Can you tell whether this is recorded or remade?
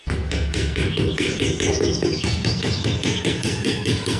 remade